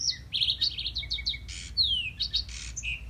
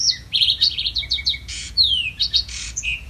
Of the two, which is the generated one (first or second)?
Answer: second